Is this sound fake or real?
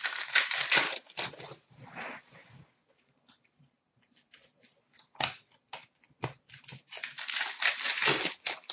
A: fake